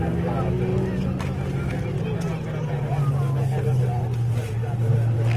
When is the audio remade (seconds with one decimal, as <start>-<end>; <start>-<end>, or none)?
none